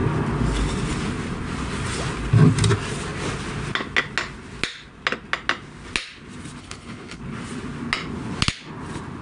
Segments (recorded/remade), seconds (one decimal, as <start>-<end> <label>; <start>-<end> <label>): 0.0-6.6 recorded; 6.6-7.2 remade; 7.2-9.2 recorded